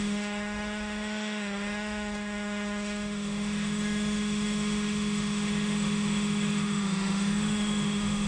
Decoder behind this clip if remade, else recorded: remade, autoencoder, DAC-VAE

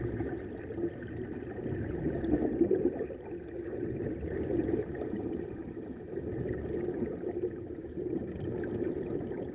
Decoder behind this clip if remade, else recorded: recorded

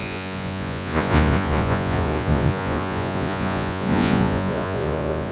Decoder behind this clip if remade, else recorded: remade, vocoder, Vocos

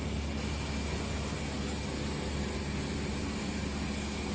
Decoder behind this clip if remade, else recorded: recorded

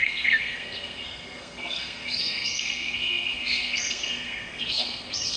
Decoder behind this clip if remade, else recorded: remade, codec, SNAC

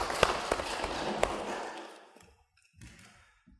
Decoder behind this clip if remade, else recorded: recorded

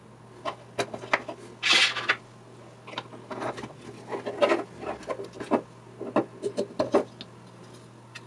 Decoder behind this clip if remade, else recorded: recorded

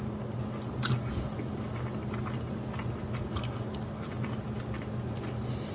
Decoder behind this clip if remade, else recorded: recorded